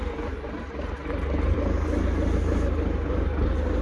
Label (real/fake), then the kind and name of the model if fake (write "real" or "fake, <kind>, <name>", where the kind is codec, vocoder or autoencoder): real